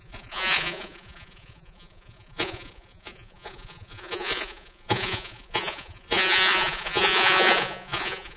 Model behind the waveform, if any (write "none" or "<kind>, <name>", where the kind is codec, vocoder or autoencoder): vocoder, Vocos